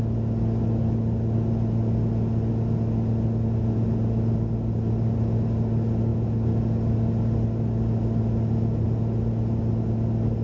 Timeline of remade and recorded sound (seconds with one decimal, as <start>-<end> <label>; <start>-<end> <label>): 0.0-10.4 recorded